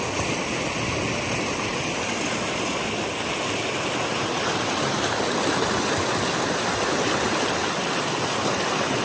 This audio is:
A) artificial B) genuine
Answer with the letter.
B